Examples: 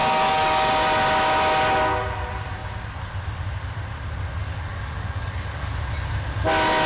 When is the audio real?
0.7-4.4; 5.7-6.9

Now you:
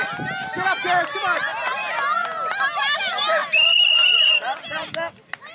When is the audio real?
0.0-3.4; 4.9-5.5

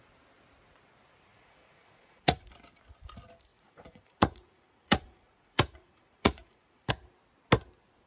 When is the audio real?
0.0-1.3; 2.4-3.5; 6.9-8.1

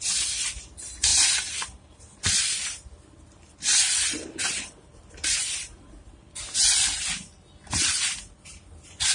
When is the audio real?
0.0-1.1; 6.2-9.1